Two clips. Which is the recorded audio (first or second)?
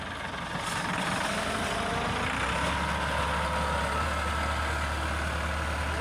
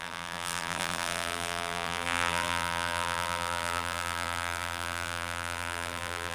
first